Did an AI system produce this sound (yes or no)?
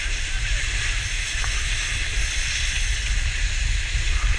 no